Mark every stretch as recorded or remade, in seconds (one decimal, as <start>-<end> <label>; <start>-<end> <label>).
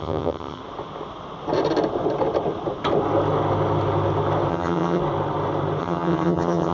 0.0-0.6 remade; 0.6-4.5 recorded; 4.5-5.0 remade; 5.0-5.8 recorded; 5.8-6.7 remade